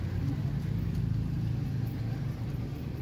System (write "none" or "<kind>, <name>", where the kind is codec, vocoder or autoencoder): none